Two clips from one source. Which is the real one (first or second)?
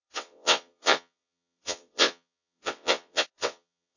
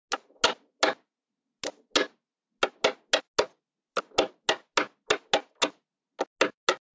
second